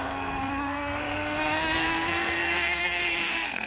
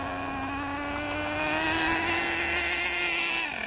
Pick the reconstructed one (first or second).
first